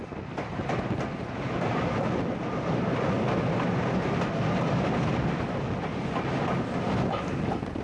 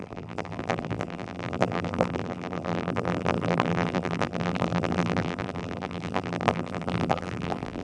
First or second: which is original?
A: first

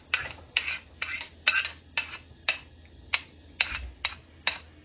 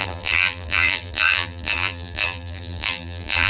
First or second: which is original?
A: first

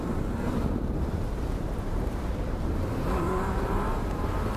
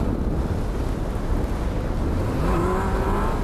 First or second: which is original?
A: second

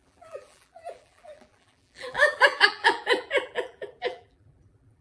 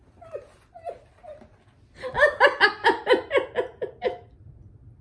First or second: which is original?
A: second